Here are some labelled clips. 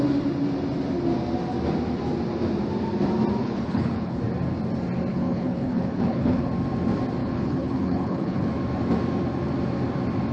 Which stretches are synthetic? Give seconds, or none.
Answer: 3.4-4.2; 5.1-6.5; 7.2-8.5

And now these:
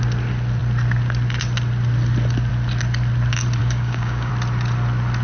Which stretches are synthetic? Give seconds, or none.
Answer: 3.6-4.3

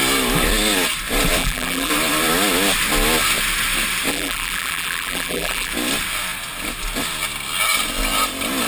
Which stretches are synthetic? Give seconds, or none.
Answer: 1.4-1.9; 4.1-5.7

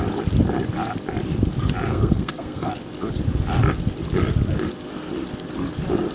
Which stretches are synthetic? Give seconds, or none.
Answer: 1.9-2.7

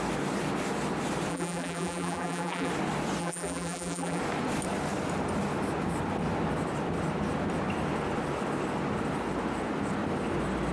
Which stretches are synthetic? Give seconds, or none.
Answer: 1.3-2.7; 3.2-4.2

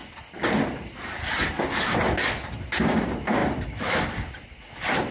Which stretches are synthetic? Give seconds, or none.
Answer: 3.4-4.1

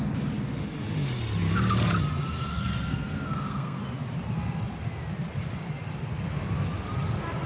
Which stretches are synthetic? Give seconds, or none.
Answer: 2.5-3.8